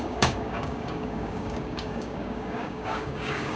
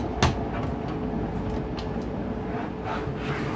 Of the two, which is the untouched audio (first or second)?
second